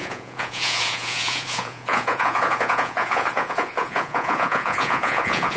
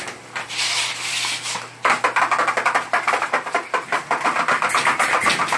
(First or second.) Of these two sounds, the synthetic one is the first